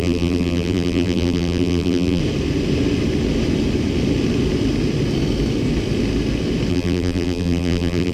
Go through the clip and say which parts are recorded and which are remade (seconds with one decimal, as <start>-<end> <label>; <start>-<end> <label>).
0.0-2.2 remade; 2.2-6.7 recorded; 6.7-8.1 remade